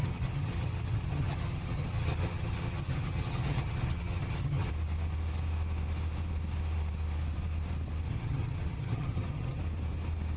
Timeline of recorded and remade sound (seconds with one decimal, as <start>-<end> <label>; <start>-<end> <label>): 0.0-4.7 remade; 4.7-8.1 recorded; 8.1-9.6 remade; 9.6-10.4 recorded